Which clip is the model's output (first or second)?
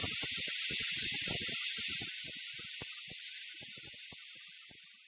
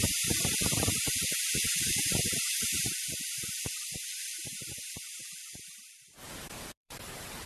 second